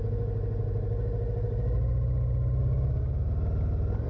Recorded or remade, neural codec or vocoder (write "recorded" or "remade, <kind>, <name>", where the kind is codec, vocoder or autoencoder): recorded